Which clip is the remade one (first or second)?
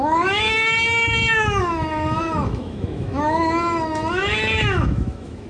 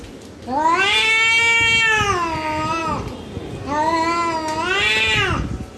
first